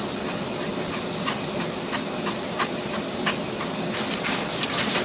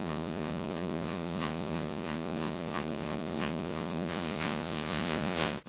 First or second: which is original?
first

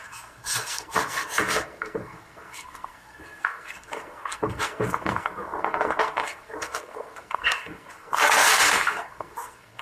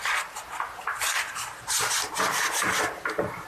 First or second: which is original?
second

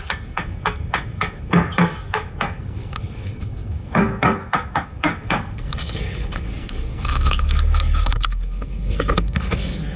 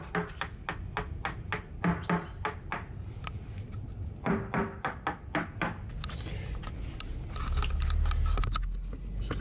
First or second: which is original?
second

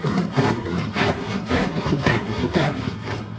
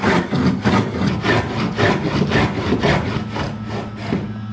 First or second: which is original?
second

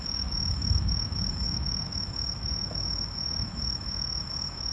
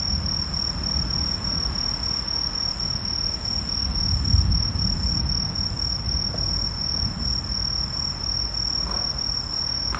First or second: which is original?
second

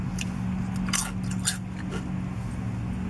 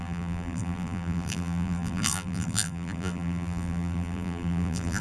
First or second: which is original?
first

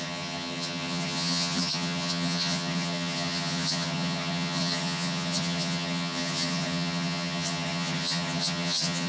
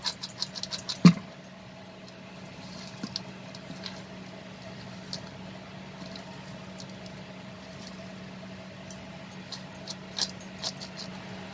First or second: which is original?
second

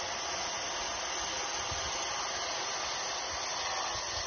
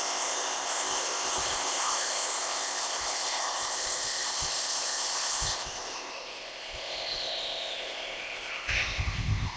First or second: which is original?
first